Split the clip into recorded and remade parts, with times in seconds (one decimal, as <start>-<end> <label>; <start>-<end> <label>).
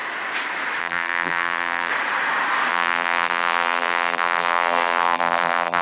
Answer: 0.0-0.8 recorded; 0.8-1.9 remade; 1.9-2.7 recorded; 2.7-5.8 remade